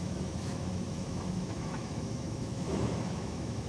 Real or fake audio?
fake